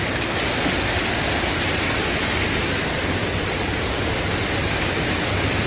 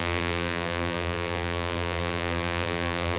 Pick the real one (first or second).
first